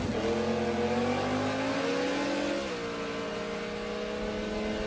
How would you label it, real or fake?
real